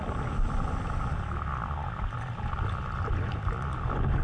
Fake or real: real